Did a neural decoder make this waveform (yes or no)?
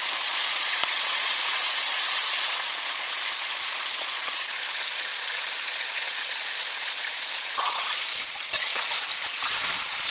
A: yes